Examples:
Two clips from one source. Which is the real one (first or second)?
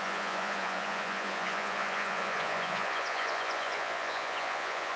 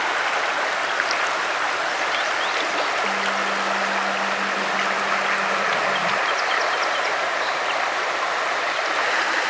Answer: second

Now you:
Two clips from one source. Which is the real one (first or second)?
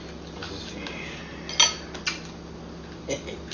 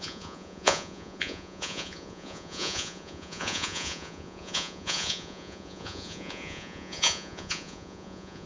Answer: first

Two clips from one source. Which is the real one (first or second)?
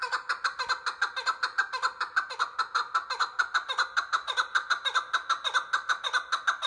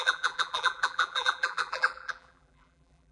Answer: first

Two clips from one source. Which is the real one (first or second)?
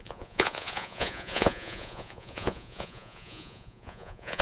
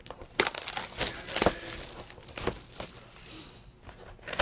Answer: second